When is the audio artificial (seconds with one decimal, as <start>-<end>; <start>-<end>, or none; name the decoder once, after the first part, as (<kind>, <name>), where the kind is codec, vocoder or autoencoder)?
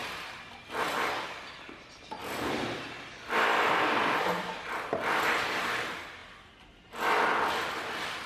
none